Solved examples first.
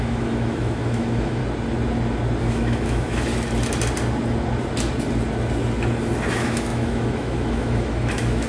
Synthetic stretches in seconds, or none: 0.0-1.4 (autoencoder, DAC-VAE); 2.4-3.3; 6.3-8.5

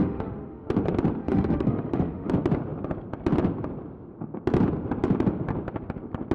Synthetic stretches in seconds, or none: 0.0-0.7 (autoencoder, DAC-VAE); 1.2-2.3

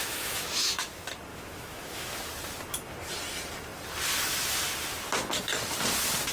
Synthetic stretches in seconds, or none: 0.0-0.9 (autoencoder, DAC-VAE); 1.3-2.1

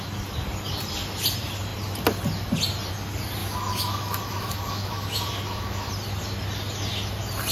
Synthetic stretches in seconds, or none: 3.4-5.9 (autoencoder, DAC-VAE)